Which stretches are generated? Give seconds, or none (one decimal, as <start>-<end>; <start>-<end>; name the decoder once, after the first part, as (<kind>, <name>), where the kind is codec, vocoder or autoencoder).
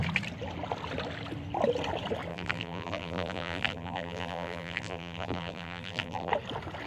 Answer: 2.3-6.3 (vocoder, BigVGAN v2)